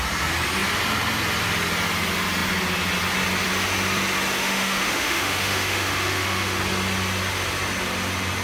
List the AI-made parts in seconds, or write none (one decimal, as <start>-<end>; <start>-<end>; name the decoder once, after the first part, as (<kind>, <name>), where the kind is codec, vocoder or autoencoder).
4.4-6.6 (autoencoder, DAC-VAE)